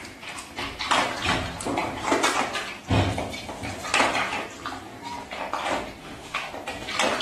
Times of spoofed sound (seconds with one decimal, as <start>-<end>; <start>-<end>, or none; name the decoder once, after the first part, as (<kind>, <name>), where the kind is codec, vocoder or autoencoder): 6.0-6.5 (autoencoder, DAC-VAE)